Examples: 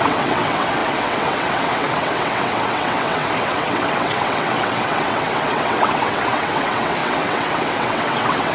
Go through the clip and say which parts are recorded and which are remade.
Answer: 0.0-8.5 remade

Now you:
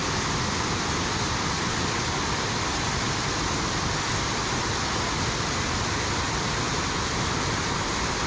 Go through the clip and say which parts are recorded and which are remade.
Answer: 0.0-8.3 recorded

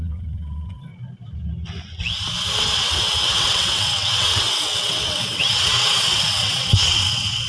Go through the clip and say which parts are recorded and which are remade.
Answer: 0.0-0.9 remade; 0.9-2.6 recorded; 2.6-7.5 remade

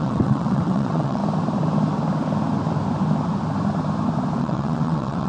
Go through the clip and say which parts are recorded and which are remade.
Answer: 0.0-1.2 remade; 1.2-4.4 recorded; 4.4-5.3 remade

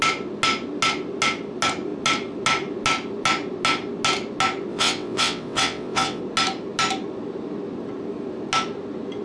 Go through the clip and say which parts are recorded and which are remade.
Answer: 0.0-4.7 recorded; 4.7-6.2 remade; 6.2-9.2 recorded